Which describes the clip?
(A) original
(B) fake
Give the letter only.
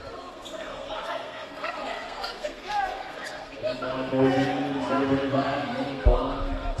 B